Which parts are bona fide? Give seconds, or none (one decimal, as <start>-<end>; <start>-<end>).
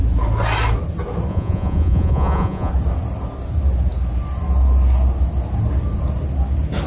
0.0-1.3; 2.7-6.9